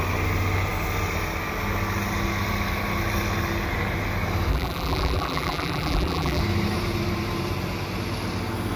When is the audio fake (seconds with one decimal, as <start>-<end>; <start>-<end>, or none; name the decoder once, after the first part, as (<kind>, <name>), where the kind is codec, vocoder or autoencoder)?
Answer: 4.5-6.4 (vocoder, BigVGAN v2)

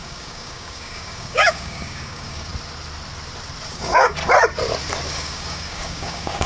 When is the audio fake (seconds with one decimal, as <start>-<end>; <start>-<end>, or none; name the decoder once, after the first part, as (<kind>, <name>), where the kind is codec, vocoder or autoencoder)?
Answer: 0.0-2.5 (codec, DAC); 3.7-4.2; 5.1-6.5

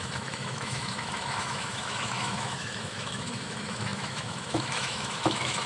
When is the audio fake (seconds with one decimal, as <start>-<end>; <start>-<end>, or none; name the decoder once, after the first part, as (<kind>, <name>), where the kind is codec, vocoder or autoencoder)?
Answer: 0.0-5.7 (autoencoder, DAC-VAE)

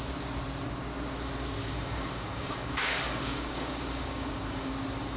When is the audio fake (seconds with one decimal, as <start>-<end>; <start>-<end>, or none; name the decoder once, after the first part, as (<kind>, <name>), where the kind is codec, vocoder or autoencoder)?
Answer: 1.6-4.7 (codec, DAC)

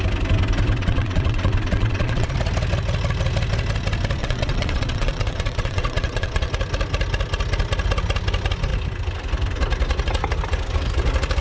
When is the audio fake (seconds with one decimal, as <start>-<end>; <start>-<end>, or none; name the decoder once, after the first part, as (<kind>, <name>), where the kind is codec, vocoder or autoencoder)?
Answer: 0.8-2.3 (vocoder, WaveNeXt); 4.2-6.5

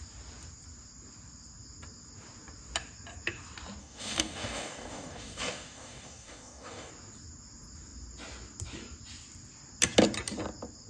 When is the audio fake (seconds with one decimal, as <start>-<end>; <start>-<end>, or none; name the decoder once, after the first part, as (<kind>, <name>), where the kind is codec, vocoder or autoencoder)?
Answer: 3.8-6.9 (codec, DAC)